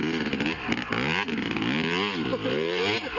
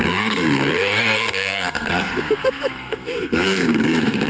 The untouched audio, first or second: first